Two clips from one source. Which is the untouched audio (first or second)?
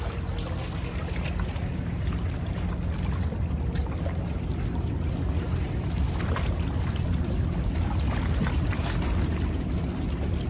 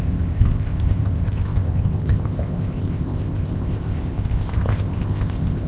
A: first